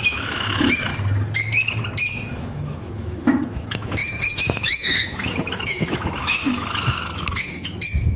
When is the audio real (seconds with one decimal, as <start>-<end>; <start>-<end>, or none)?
0.9-2.3